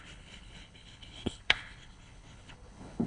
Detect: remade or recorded remade